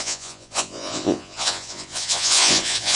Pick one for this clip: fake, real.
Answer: fake